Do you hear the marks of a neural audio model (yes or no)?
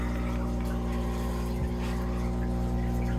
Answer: no